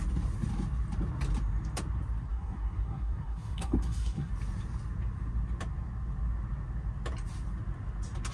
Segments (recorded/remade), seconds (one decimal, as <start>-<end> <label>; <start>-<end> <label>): 0.0-2.3 recorded; 2.3-4.3 remade; 4.3-8.3 recorded